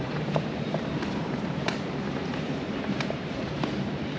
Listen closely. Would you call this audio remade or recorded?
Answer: remade